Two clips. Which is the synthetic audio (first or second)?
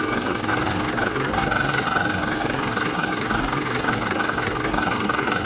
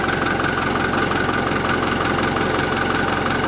first